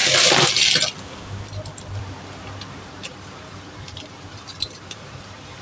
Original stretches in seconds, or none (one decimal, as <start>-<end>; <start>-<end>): 0.0-2.0